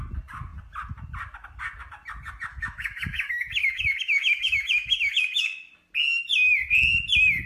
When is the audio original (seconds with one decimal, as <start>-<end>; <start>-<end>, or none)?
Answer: 0.0-2.5; 5.7-7.5